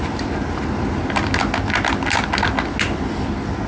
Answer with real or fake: real